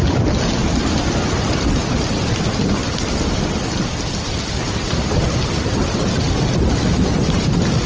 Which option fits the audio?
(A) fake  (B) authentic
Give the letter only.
B